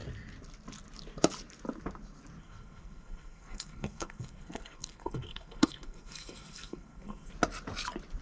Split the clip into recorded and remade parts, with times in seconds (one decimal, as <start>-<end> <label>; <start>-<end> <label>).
0.0-2.4 recorded; 2.4-7.3 remade; 7.3-8.2 recorded